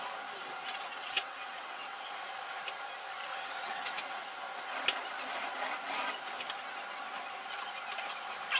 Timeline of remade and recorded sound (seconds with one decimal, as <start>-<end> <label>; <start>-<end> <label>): 0.0-0.9 recorded; 0.9-2.1 remade; 2.1-3.3 recorded; 3.3-4.2 remade; 4.2-8.6 recorded